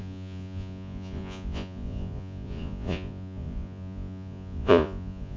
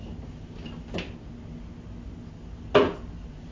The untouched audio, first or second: second